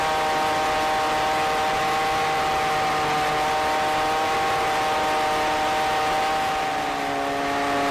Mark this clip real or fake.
real